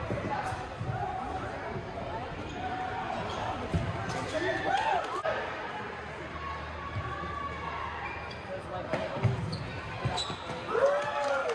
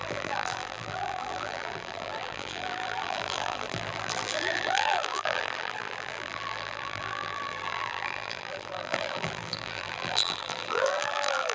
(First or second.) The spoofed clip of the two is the second